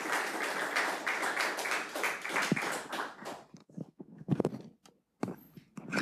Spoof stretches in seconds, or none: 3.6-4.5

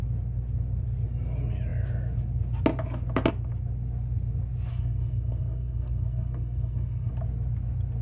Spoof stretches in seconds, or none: 4.7-7.1